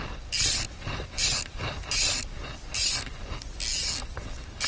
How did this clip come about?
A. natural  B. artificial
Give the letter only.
A